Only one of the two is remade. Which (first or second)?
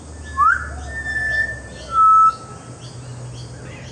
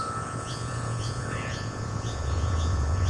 second